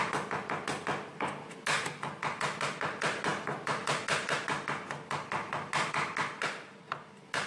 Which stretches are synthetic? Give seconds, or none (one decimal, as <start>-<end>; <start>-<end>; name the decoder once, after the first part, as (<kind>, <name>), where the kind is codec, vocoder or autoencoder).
none